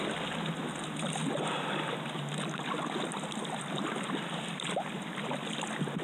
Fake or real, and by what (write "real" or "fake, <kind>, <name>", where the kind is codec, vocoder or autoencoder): real